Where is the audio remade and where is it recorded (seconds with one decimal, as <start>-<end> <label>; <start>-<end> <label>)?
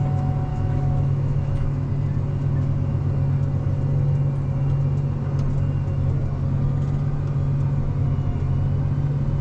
0.0-0.5 recorded; 0.5-1.9 remade; 1.9-9.4 recorded